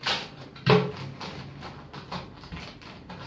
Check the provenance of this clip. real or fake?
real